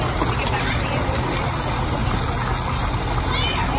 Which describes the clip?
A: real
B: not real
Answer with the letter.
A